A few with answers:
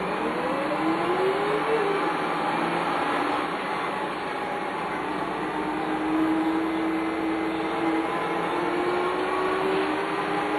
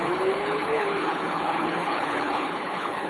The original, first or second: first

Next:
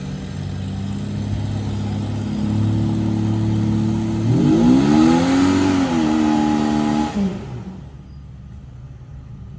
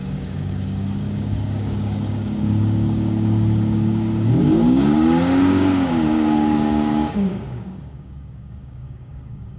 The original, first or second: first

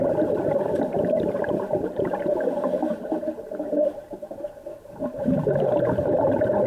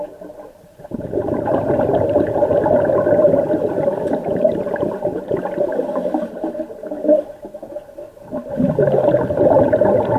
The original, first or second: second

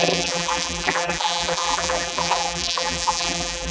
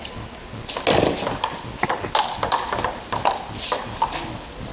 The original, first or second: second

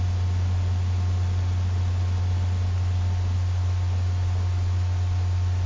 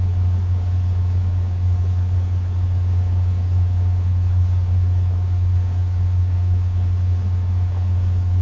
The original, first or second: first